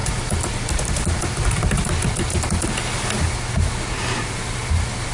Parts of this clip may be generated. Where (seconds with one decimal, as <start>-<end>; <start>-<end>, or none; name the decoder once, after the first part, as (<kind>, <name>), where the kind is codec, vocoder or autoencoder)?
none